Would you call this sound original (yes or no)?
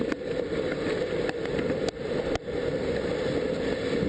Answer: yes